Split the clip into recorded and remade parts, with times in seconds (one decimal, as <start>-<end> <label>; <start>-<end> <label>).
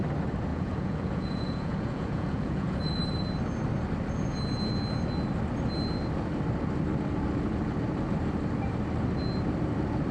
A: 0.0-0.5 recorded; 0.5-3.0 remade; 3.0-10.1 recorded